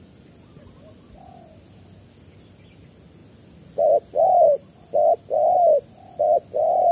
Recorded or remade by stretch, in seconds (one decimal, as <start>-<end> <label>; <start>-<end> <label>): 0.0-6.9 recorded